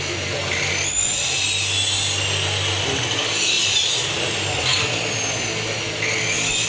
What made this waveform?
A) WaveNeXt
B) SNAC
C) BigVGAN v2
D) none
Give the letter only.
D